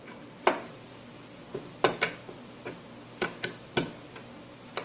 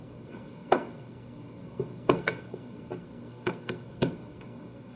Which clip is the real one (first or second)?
first